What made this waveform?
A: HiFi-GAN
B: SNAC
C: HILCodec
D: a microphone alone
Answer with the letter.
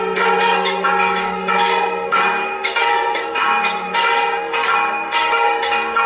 B